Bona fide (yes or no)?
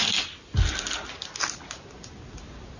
yes